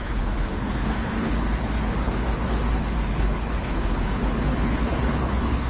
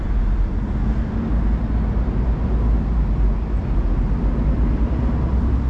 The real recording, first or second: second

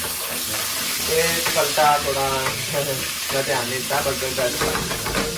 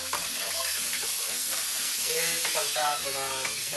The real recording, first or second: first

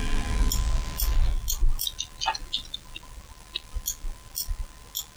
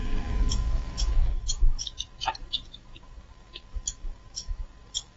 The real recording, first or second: first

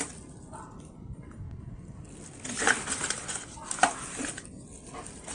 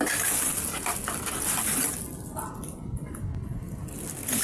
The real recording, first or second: second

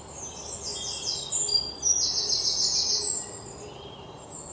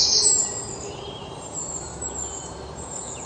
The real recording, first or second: first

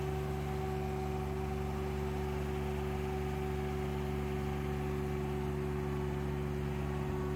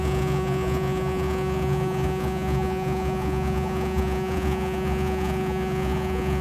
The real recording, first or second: first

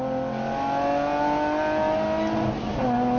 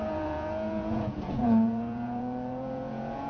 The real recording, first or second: first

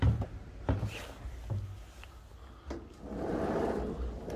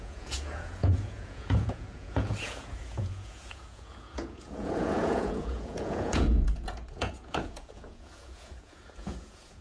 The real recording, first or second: first